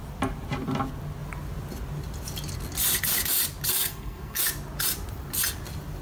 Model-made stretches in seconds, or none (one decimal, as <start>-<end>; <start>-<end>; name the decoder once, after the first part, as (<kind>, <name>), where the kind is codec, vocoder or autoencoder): 3.7-4.4 (codec, SNAC)